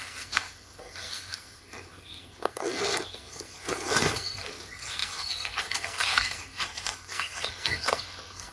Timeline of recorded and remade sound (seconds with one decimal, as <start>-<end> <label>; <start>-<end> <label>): 0.0-8.5 remade